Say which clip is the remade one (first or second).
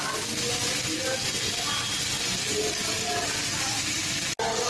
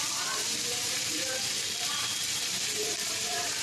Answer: second